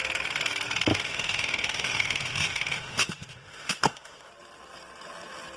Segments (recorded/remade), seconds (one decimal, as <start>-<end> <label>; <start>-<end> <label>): 0.0-0.9 recorded; 0.9-4.3 remade; 4.3-5.6 recorded